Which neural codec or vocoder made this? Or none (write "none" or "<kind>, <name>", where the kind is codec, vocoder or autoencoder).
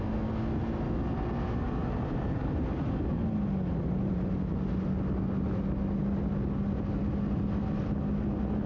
none